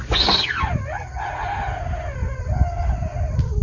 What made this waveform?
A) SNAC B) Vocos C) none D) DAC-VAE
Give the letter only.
C